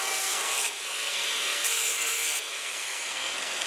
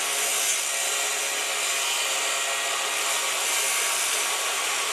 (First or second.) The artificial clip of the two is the first